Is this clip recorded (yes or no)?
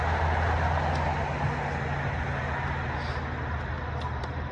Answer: yes